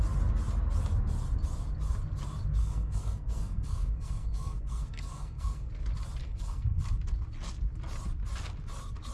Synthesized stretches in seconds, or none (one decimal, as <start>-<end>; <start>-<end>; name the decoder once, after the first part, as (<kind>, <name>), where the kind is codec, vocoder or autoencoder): 2.6-5.7 (codec, SNAC); 6.2-6.8